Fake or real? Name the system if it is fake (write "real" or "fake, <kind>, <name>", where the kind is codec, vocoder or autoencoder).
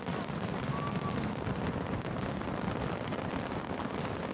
real